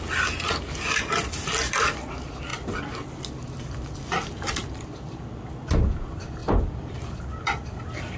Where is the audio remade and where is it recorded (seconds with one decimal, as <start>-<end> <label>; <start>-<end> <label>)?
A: 0.0-4.6 recorded; 4.6-5.6 remade; 5.6-6.4 recorded; 6.4-8.2 remade